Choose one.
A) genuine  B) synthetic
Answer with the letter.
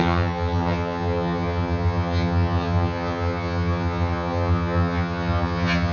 B